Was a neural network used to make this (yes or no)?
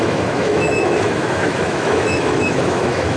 yes